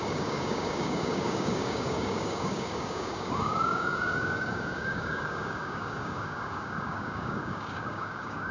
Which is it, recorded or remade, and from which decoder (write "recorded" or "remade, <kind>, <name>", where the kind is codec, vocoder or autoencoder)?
remade, codec, DAC